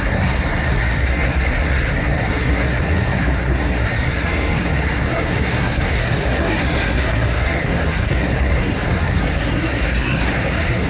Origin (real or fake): fake